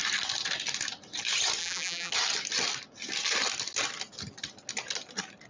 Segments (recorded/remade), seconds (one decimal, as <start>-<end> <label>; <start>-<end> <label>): 0.0-1.6 recorded; 1.6-2.1 remade; 2.1-5.5 recorded